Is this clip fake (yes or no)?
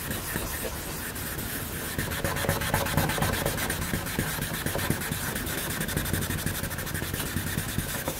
no